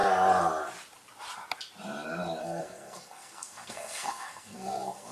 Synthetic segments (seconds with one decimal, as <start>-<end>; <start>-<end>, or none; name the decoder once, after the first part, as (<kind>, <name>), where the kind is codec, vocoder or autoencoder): 2.4-5.1 (codec, SNAC)